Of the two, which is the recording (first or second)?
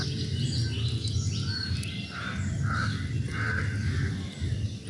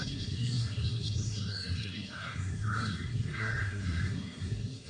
first